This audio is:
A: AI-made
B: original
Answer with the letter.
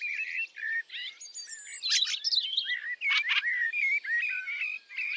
B